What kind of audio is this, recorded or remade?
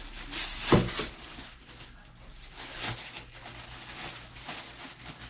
recorded